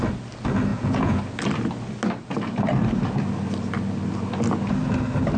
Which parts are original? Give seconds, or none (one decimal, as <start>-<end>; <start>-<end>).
0.0-0.7; 1.2-5.4